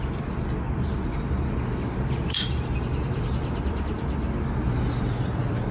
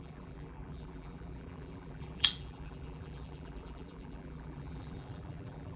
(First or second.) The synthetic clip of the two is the second